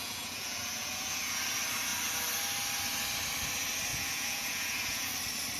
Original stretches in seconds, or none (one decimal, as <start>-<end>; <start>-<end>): 1.4-3.9; 5.1-5.6